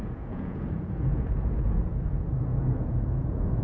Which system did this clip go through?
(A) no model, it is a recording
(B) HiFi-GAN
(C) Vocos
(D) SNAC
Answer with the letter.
C